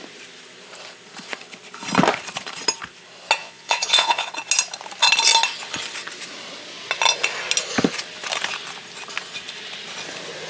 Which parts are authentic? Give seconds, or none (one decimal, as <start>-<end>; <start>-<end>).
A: 0.0-3.4; 4.3-10.5